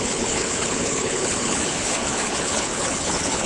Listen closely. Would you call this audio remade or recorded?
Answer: remade